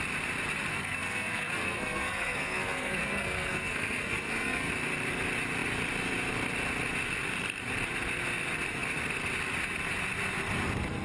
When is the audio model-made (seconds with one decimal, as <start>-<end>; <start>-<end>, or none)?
0.7-4.7